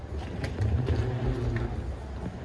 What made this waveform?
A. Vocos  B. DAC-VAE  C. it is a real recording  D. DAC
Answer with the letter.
C